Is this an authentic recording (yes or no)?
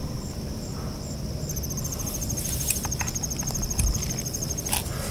yes